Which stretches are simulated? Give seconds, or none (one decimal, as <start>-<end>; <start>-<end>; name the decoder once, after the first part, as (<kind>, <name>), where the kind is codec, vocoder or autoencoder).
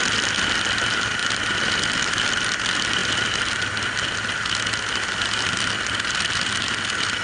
none